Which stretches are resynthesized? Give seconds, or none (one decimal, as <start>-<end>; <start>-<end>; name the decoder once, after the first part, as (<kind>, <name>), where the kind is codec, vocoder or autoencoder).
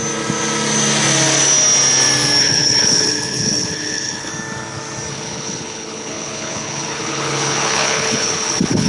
2.4-4.3 (codec, HILCodec); 5.1-8.9